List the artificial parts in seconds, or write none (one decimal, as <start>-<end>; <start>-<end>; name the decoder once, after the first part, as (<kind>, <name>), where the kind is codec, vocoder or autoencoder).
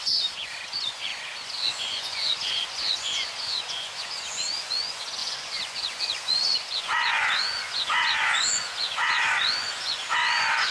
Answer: 0.0-10.7 (vocoder, Vocos)